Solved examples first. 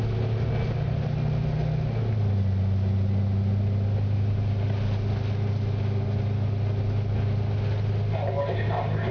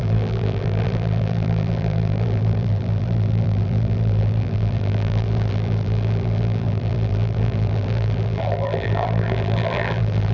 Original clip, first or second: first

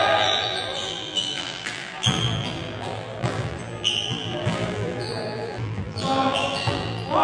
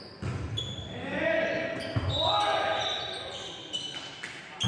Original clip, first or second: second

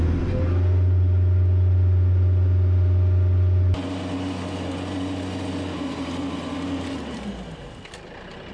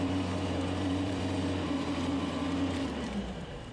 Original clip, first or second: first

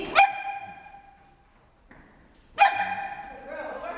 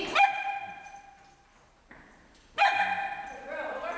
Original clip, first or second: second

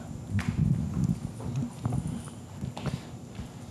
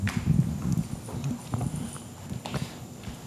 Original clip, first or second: first